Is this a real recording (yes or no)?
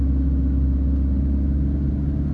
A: yes